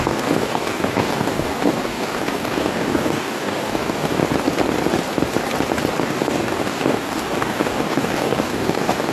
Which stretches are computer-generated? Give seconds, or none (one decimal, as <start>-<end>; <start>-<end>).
0.0-4.2; 6.0-9.1